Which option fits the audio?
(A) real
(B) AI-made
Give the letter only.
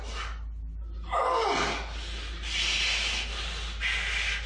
A